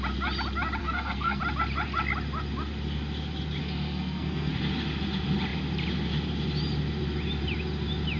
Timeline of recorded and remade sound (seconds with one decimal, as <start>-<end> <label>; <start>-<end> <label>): 0.0-0.8 recorded; 0.8-1.4 remade; 1.4-3.6 recorded; 3.6-4.5 remade; 4.5-8.2 recorded